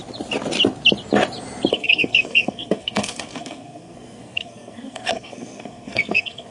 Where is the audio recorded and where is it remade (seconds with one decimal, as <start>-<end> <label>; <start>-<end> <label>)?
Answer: 0.0-1.7 recorded; 1.7-6.5 remade